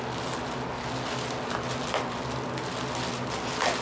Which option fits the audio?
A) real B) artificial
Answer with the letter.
A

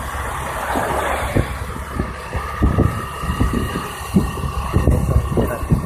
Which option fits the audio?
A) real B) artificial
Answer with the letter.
A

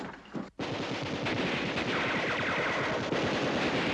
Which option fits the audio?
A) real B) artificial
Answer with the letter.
A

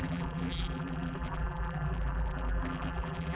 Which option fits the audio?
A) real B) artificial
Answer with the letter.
B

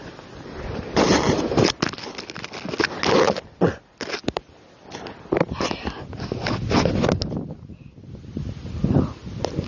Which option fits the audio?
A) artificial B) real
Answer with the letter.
B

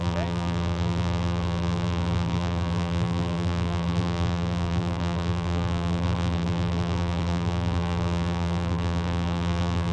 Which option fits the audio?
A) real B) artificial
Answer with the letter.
B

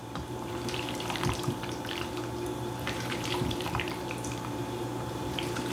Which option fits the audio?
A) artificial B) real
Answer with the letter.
A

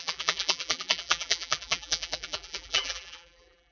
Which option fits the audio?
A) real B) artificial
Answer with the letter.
B